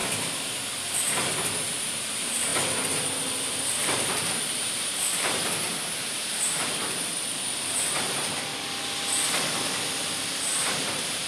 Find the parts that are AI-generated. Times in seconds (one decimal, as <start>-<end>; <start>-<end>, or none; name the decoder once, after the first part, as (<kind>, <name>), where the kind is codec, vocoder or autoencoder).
2.0-2.5 (vocoder, BigVGAN v2); 3.2-8.5; 10.0-11.3